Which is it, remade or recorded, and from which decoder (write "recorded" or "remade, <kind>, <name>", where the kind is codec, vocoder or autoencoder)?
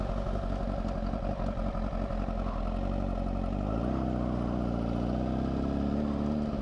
recorded